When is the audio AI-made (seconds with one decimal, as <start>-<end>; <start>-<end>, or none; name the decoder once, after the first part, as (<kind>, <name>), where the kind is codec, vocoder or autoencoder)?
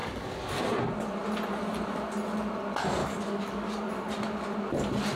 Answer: 0.0-0.6 (codec, DAC); 3.0-3.9